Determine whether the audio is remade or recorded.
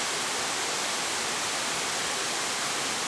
recorded